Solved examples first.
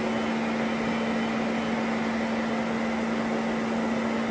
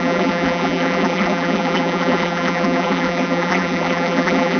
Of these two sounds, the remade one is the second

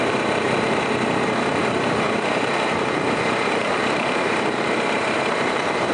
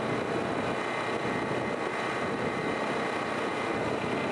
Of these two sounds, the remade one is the first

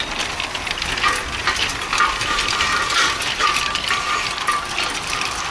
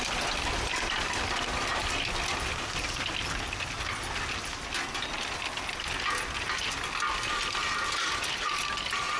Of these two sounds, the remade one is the first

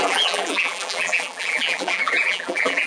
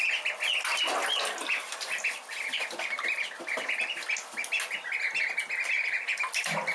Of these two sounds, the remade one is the first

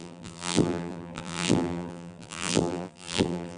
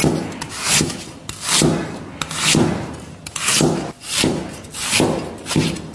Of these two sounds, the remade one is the first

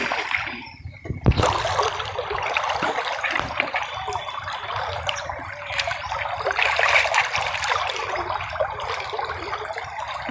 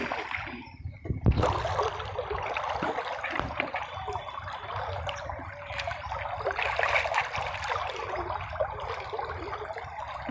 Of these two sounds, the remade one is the first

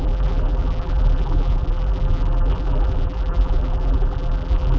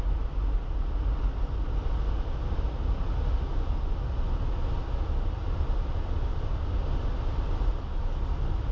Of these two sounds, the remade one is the first